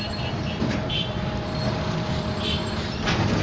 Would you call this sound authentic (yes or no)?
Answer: no